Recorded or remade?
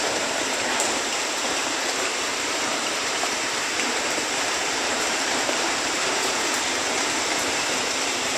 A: remade